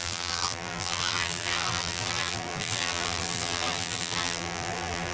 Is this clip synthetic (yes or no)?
yes